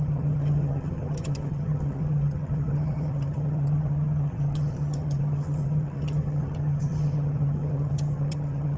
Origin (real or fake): fake